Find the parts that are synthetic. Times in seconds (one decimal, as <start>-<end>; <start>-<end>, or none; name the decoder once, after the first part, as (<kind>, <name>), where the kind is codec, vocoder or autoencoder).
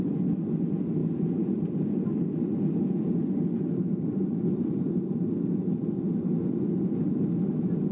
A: none